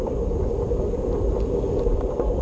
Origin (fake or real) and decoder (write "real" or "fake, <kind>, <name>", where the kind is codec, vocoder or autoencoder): real